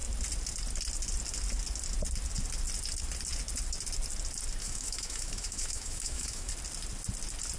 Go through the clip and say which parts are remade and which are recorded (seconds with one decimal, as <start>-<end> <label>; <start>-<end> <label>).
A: 0.0-4.6 recorded; 4.6-6.5 remade; 6.5-7.6 recorded